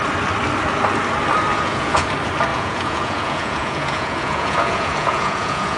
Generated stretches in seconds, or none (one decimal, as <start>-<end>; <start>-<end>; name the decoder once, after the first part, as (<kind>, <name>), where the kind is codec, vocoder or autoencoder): 1.5-2.1 (vocoder, Vocos); 2.5-5.8